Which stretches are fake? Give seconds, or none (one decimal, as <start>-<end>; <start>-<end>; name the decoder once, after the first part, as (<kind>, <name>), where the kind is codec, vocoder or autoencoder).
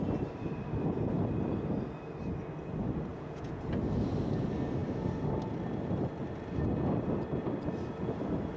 3.1-3.6 (vocoder, Vocos)